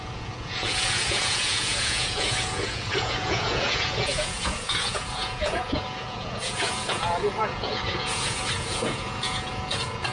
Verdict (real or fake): fake